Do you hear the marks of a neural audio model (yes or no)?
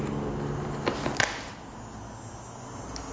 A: no